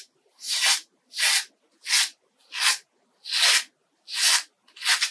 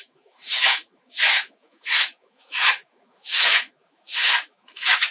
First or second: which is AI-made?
second